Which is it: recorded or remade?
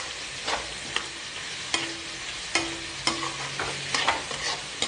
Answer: recorded